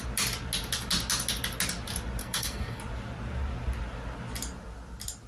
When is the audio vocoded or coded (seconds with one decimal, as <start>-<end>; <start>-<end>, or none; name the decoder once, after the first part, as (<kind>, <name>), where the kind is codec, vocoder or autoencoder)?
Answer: 2.2-2.8 (codec, SNAC)